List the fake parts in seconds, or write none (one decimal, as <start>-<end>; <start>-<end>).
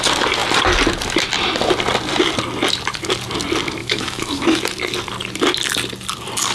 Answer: 3.8-4.6